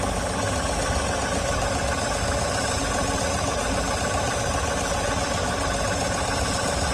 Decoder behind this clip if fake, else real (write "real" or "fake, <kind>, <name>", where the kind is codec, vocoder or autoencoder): real